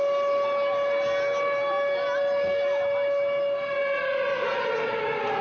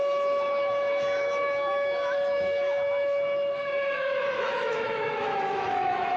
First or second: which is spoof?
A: second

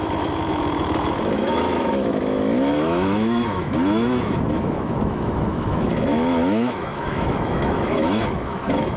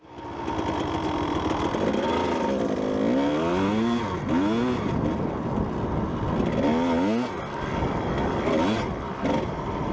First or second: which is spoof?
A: first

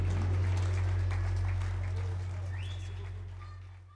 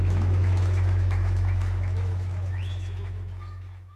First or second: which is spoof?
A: second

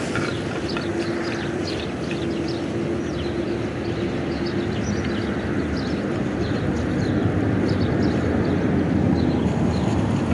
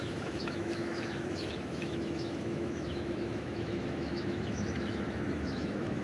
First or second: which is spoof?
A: second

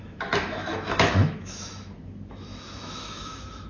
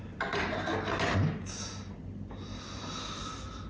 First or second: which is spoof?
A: first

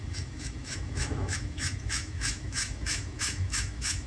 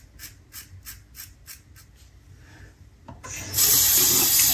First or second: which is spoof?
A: first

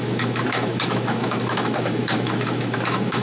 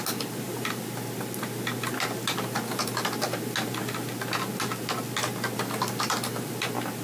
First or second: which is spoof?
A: first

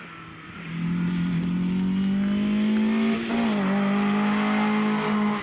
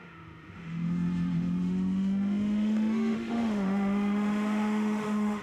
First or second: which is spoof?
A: second